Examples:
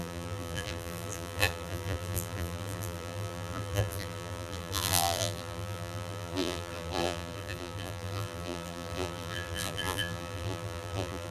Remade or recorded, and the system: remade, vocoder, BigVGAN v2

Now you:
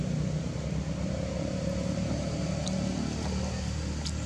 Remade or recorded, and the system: recorded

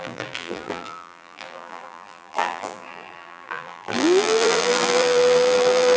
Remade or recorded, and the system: remade, vocoder, BigVGAN v2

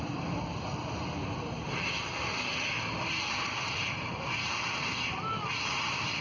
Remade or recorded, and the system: remade, vocoder, BigVGAN v2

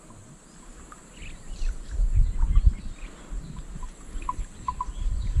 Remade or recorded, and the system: recorded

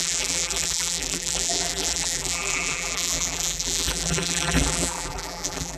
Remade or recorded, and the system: remade, vocoder, BigVGAN v2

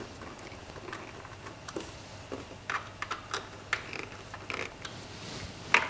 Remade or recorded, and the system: recorded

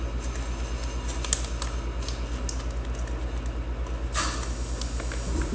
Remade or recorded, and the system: recorded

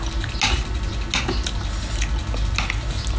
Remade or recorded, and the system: recorded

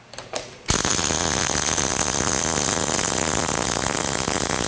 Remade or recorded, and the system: recorded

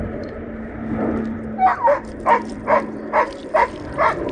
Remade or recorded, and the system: remade, vocoder, BigVGAN v2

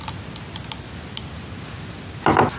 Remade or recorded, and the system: recorded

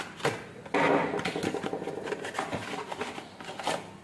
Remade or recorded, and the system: recorded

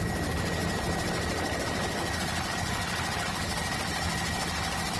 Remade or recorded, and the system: recorded